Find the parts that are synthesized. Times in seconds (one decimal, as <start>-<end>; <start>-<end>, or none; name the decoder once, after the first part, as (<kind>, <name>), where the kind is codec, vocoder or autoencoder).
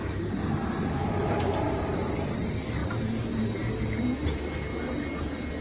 0.0-0.7 (vocoder, BigVGAN v2); 1.2-2.4; 2.8-3.7